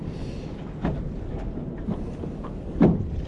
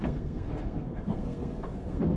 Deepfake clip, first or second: second